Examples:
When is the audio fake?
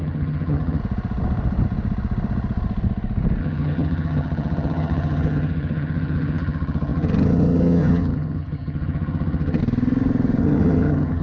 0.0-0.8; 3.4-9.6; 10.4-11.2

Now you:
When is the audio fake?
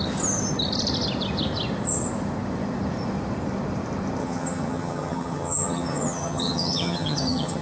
4.2-7.6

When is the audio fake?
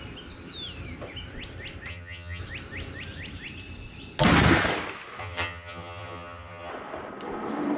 1.9-2.4; 5.2-6.7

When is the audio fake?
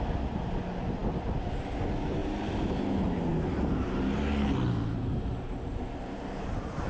none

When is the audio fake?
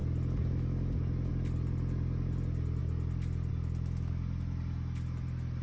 none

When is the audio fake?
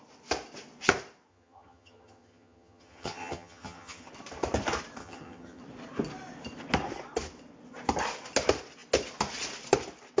1.3-4.1; 5.0-5.6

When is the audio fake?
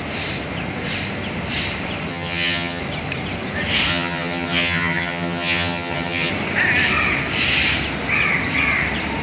2.1-2.8; 3.9-6.3